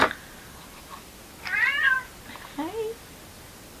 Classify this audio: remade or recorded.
recorded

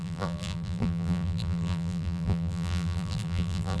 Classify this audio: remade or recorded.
remade